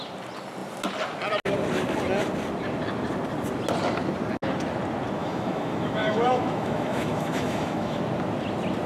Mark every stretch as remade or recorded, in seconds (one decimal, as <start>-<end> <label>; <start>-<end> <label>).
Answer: 0.0-5.2 recorded; 5.2-8.0 remade; 8.0-8.9 recorded